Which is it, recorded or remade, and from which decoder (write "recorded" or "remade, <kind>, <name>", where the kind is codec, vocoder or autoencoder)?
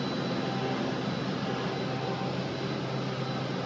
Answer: recorded